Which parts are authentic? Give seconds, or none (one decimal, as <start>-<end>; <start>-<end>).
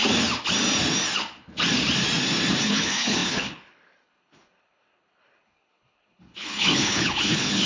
0.0-2.6